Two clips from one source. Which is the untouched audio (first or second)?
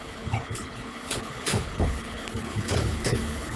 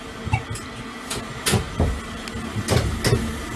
second